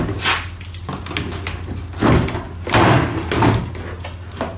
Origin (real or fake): real